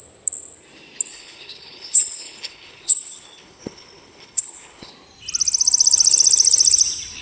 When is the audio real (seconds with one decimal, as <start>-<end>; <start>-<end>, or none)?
0.0-1.1; 4.9-7.2